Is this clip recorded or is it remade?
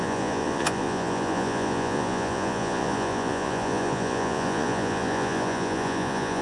remade